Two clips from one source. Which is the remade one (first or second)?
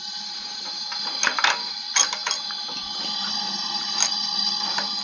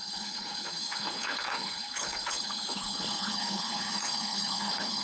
second